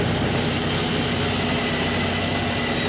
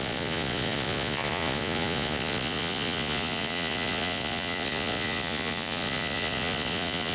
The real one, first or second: first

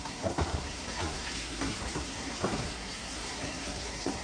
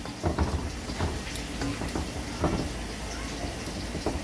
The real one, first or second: second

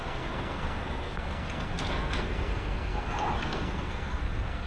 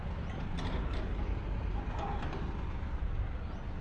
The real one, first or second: second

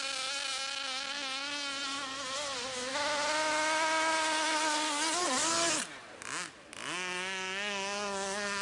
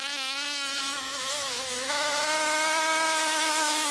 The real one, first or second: first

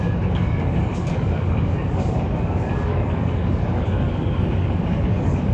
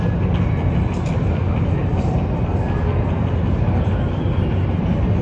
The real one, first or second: second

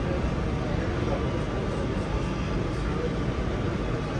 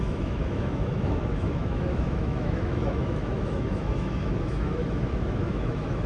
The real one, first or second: first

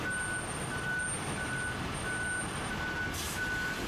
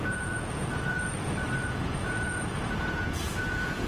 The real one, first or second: first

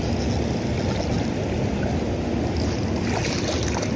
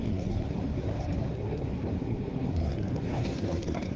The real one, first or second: first